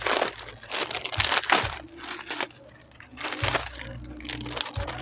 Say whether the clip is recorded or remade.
recorded